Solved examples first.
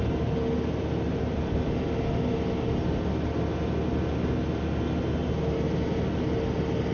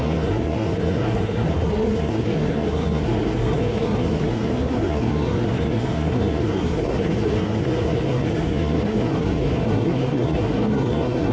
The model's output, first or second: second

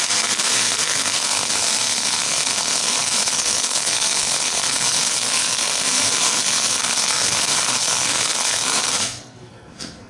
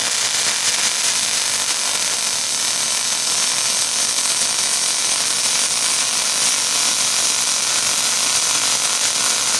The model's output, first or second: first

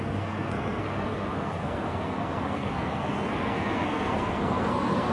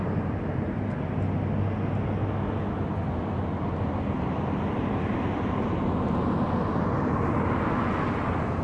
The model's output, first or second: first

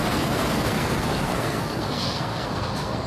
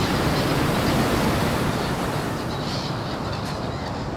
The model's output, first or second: first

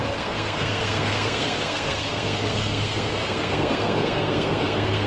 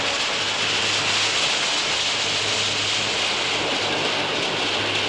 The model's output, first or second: first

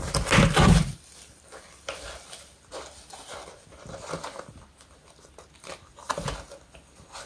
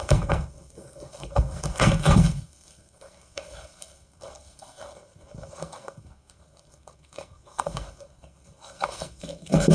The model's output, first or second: second